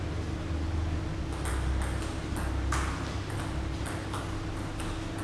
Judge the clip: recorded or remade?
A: recorded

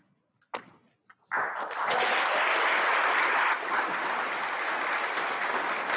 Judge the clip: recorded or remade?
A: recorded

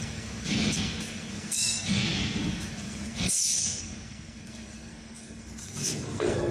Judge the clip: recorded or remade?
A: remade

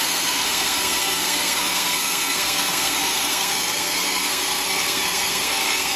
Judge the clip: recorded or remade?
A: remade